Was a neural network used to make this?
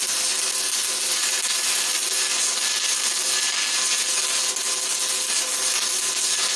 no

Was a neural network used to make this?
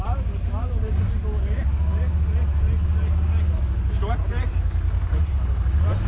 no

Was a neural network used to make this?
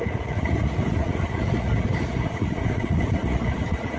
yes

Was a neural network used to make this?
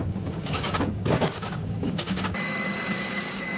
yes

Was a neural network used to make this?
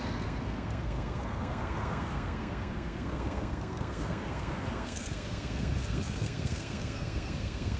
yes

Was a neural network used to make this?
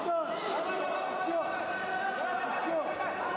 no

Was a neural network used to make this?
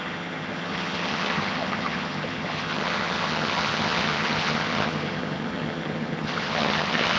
yes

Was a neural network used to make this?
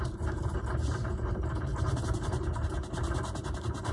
yes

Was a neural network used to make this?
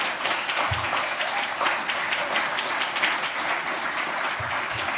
no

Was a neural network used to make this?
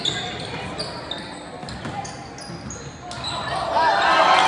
no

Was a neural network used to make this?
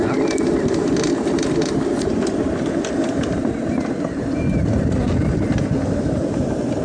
yes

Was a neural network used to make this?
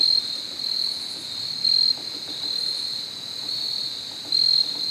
no